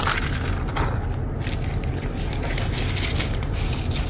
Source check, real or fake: real